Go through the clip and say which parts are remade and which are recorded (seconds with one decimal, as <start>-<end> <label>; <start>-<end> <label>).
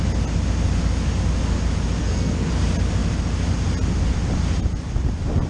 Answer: 0.0-2.0 recorded; 2.0-2.5 remade; 2.5-5.5 recorded